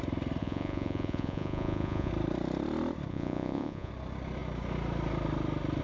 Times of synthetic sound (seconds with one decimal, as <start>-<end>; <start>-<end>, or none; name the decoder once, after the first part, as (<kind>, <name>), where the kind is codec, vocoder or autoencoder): 0.4-2.1 (vocoder, Vocos); 3.1-3.9